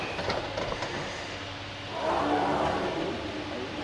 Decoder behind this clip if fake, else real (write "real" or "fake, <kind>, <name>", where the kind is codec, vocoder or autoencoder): fake, vocoder, BigVGAN v2